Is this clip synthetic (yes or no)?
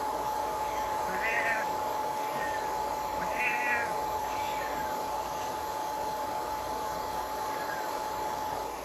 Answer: yes